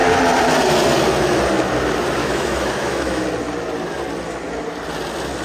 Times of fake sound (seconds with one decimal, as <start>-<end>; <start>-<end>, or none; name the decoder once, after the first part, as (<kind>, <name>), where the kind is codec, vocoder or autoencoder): 2.2-3.2 (autoencoder, DAC-VAE)